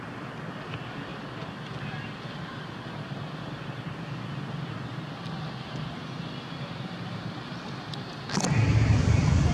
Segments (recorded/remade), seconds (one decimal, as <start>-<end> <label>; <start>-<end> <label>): 0.0-9.5 recorded